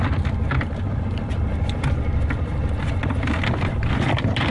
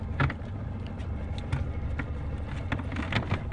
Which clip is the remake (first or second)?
first